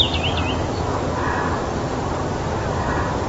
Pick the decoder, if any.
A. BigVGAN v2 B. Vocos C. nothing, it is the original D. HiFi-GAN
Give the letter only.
C